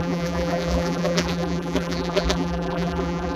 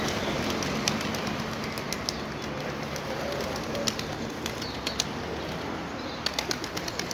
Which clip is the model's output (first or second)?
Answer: first